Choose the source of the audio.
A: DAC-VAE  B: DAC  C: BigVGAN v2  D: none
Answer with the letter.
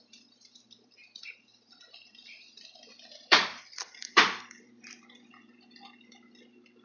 C